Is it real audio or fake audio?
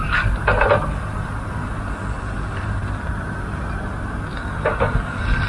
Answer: real